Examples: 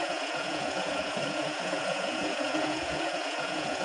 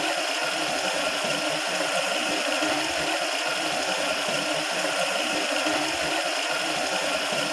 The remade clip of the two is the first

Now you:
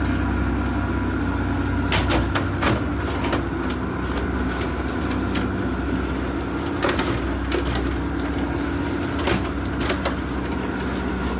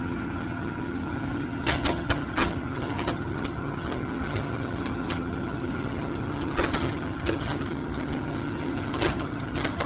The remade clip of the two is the second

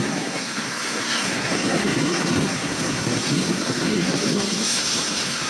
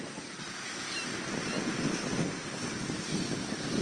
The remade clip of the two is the first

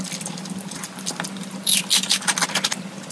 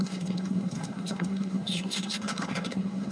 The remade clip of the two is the second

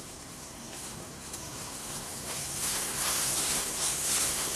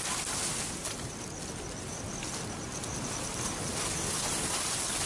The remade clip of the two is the first